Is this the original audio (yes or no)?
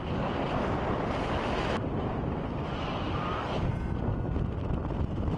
yes